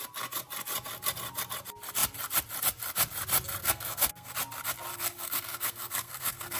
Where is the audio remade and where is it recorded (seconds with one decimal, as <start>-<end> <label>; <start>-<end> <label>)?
0.0-3.6 recorded; 3.6-4.3 remade; 4.3-4.9 recorded; 4.9-6.6 remade